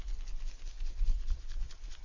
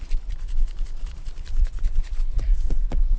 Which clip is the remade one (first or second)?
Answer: second